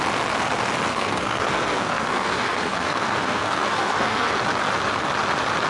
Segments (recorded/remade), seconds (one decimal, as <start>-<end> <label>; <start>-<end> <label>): 0.0-0.9 recorded; 0.9-4.3 remade; 4.3-5.7 recorded